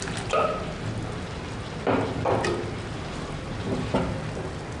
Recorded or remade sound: recorded